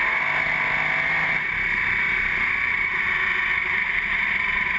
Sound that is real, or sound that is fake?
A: real